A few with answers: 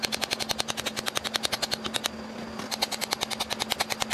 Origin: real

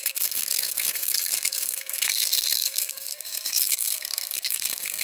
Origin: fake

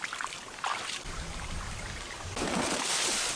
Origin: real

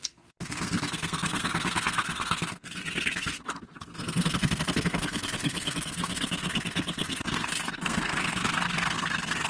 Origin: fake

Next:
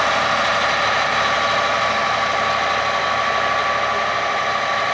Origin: real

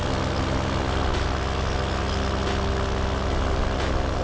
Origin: real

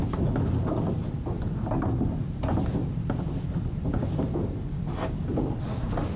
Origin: real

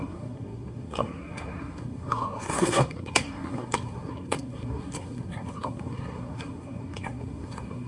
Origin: fake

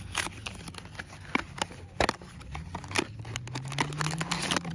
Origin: real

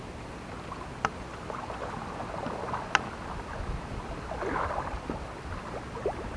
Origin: real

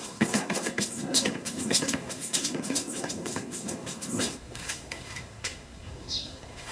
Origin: fake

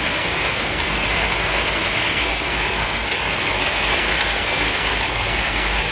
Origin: fake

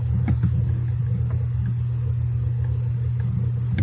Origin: real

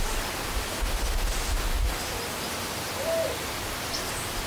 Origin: real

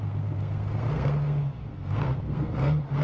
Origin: fake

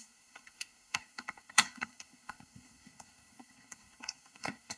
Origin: fake